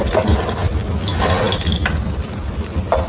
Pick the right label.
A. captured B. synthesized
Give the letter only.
A